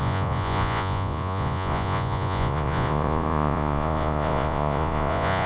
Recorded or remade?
remade